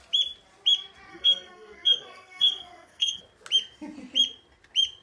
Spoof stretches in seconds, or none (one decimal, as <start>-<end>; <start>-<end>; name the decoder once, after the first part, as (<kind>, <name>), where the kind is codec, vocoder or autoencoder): 1.1-3.2 (codec, SNAC)

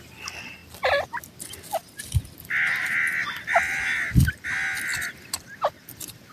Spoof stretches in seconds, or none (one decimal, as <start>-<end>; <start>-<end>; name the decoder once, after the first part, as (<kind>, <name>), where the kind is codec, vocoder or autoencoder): none

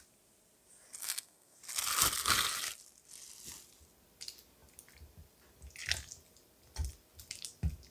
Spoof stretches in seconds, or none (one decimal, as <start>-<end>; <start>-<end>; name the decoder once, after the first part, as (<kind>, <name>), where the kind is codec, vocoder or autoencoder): 1.0-1.6 (codec, SNAC)

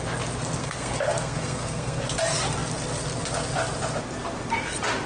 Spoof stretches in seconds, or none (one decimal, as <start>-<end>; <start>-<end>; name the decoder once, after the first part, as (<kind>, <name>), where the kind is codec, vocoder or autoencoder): 0.6-2.0 (codec, SNAC)

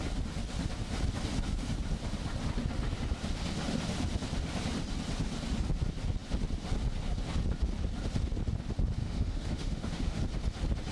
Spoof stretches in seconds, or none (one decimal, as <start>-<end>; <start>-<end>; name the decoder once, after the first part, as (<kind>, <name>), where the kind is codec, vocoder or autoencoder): 9.0-10.2 (autoencoder, DAC-VAE)

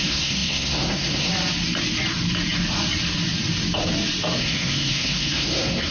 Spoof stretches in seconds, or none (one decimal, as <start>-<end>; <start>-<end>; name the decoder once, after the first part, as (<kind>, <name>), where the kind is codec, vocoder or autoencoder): 0.0-1.3 (codec, SNAC); 4.4-5.9

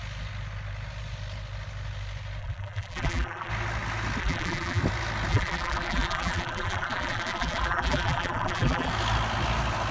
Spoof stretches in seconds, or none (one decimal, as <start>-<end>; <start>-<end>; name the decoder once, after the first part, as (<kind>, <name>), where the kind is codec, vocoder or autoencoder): 2.4-3.5 (vocoder, BigVGAN v2); 4.2-4.8; 5.3-8.9